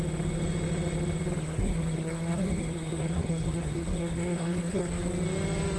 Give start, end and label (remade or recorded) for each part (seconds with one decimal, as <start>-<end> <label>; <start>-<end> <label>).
0.0-1.4 recorded; 1.4-4.9 remade; 4.9-5.8 recorded